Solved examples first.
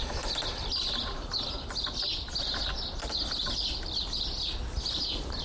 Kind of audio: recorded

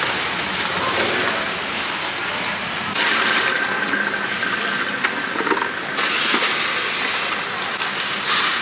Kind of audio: recorded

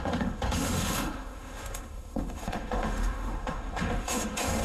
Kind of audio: remade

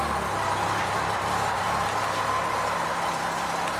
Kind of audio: recorded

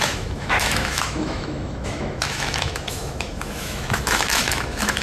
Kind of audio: remade